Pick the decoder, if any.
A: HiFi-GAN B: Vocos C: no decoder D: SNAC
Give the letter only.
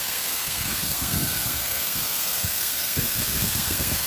D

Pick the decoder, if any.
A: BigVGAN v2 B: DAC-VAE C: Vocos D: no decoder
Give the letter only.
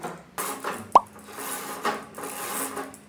D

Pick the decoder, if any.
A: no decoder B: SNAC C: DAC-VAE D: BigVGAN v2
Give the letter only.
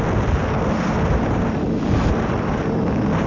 A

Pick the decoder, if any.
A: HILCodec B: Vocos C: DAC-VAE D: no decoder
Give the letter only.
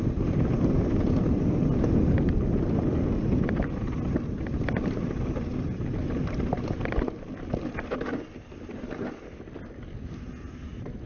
D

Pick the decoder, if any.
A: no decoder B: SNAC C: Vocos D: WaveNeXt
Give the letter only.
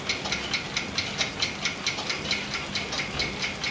A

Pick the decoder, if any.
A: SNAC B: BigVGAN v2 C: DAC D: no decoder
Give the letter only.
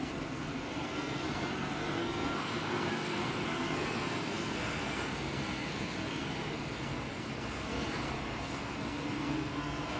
A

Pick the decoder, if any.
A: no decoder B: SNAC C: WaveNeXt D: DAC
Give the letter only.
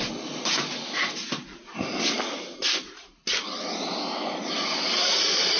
A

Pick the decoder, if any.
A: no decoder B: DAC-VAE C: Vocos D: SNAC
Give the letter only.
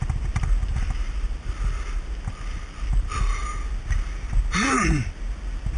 A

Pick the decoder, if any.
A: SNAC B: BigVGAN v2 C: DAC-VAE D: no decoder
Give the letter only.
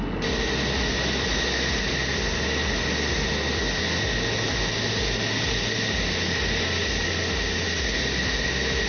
D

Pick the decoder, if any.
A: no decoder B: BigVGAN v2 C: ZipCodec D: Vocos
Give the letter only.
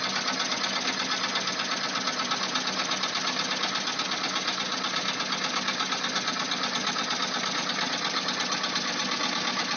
A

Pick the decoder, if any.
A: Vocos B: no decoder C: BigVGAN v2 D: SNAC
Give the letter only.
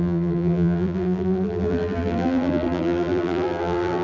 C